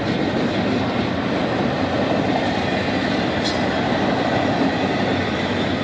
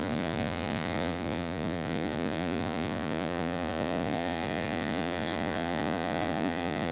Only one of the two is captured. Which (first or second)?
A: first